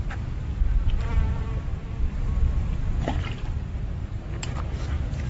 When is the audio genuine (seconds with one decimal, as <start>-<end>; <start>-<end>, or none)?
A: 0.0-4.0; 4.6-5.3